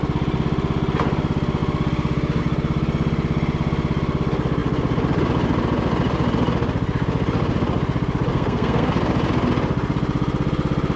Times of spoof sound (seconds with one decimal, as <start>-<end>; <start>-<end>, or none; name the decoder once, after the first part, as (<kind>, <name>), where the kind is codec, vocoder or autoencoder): 8.3-8.9 (codec, SNAC)